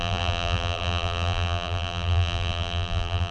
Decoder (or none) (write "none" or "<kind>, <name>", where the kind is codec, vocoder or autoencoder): vocoder, BigVGAN v2